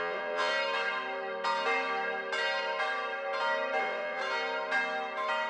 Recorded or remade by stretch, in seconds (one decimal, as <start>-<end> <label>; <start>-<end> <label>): 0.0-0.5 remade; 0.5-3.8 recorded; 3.8-4.2 remade; 4.2-5.5 recorded